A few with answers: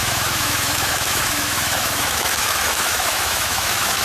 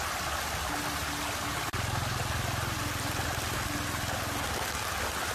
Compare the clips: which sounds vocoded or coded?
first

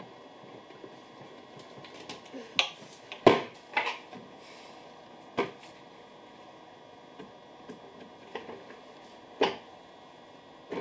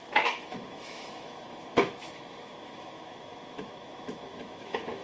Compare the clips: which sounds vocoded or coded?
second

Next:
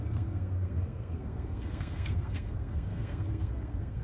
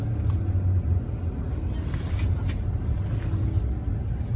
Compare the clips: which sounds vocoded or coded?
first